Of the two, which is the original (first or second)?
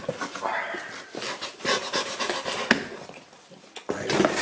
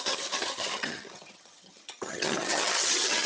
first